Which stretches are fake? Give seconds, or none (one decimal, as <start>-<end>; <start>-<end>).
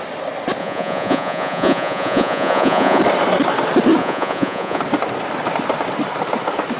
0.6-3.0; 4.0-4.8